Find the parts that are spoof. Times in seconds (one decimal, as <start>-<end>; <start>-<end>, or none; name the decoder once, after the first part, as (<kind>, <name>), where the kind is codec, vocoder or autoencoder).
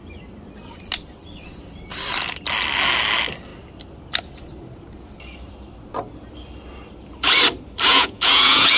7.9-8.8 (vocoder, Vocos)